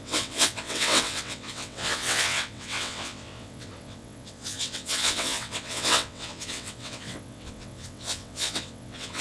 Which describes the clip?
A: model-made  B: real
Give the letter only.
A